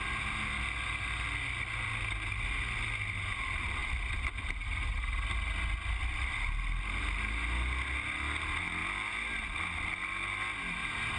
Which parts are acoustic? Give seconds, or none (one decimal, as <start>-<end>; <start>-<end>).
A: 0.0-11.2